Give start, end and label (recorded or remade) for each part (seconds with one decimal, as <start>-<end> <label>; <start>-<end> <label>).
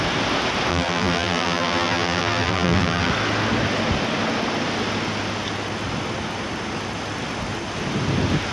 0.0-0.7 recorded; 0.7-3.1 remade; 3.1-8.5 recorded